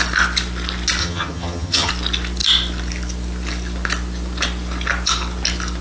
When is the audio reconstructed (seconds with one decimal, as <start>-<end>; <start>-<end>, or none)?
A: 1.0-1.9